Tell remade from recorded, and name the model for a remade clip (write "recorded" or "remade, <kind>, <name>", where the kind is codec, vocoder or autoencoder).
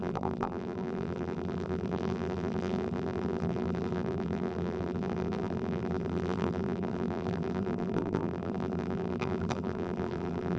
remade, vocoder, BigVGAN v2